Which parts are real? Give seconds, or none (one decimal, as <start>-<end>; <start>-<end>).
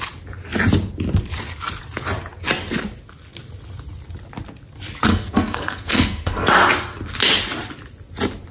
0.0-5.1; 6.5-8.5